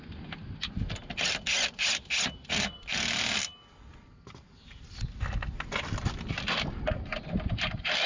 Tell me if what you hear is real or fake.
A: real